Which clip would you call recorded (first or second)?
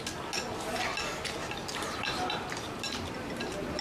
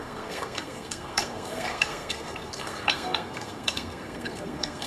first